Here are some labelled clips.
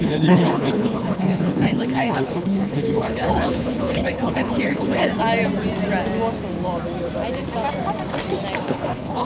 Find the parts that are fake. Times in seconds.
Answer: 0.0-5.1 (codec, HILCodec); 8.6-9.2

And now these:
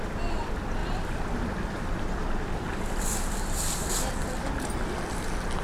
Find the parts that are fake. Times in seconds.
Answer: 0.8-4.2 (vocoder, BigVGAN v2)

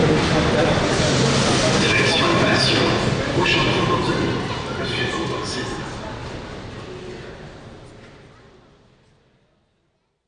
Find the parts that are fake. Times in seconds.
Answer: 0.0-4.8 (vocoder, BigVGAN v2); 6.2-7.3

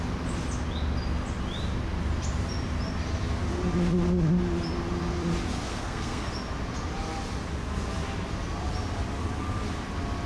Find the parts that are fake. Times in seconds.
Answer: 5.7-6.3 (codec, SNAC)

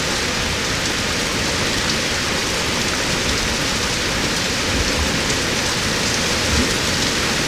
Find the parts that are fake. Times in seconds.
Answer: none

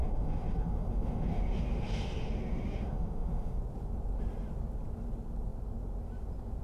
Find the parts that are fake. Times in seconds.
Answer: 0.0-3.6 (autoencoder, DAC-VAE)